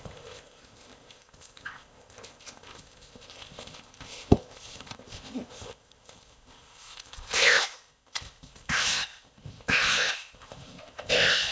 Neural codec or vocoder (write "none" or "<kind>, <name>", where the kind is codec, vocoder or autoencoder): codec, ZipCodec